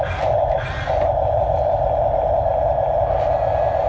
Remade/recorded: recorded